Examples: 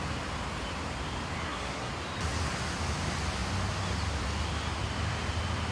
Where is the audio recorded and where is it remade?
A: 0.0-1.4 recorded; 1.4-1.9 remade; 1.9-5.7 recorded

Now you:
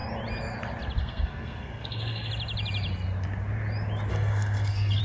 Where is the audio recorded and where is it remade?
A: 0.0-1.0 recorded; 1.0-2.3 remade; 2.3-4.1 recorded; 4.1-5.0 remade